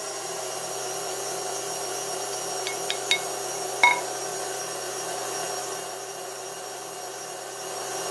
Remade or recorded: recorded